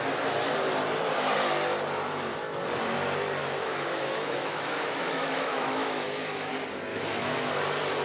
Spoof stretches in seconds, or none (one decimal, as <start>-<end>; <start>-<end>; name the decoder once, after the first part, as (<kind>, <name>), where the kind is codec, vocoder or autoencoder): 3.4-6.5 (autoencoder, DAC-VAE); 6.9-7.5